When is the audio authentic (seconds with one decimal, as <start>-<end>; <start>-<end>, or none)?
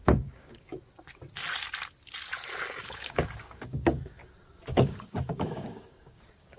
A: 0.7-2.8; 4.2-4.7